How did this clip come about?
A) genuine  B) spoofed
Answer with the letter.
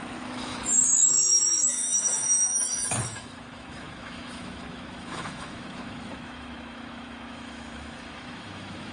B